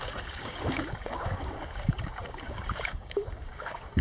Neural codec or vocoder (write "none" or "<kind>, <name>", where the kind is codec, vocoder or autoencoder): codec, DAC